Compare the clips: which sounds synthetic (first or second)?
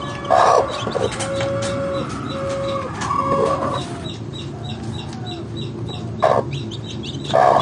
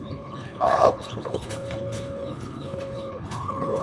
second